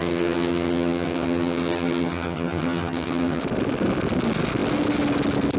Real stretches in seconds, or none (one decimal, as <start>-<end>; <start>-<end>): 3.4-5.6